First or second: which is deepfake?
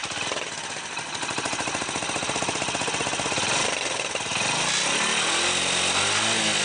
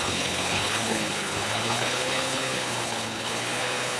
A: second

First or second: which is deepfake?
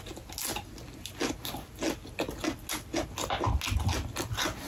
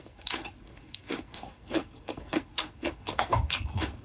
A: second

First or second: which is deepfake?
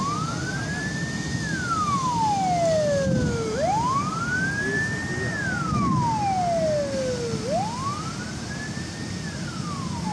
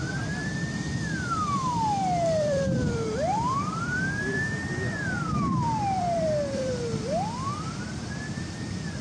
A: second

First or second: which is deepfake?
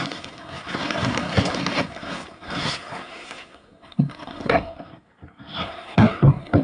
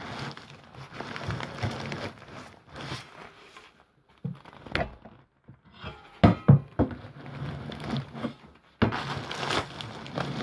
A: first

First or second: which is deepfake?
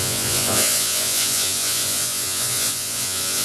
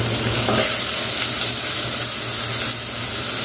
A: first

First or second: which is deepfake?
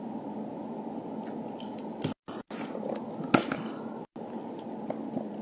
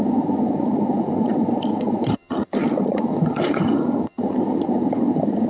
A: second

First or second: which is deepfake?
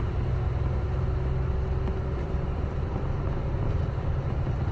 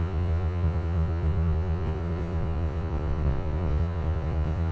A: second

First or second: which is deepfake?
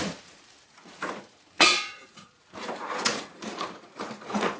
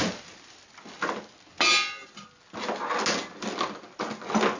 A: first